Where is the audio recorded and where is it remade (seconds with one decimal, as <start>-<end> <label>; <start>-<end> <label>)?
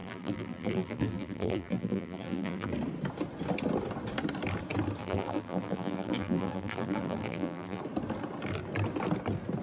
0.0-2.7 remade; 2.7-5.0 recorded; 5.0-7.8 remade; 7.8-9.6 recorded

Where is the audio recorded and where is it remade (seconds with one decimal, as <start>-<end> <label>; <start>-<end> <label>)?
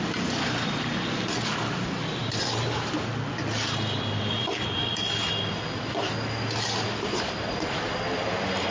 0.0-8.7 recorded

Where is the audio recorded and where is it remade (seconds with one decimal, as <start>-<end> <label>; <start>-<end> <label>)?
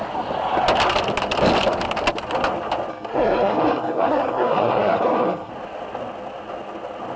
0.0-2.9 recorded; 2.9-5.5 remade; 5.5-7.2 recorded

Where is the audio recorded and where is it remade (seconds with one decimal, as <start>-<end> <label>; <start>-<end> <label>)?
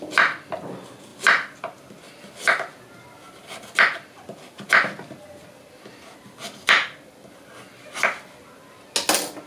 0.0-9.5 recorded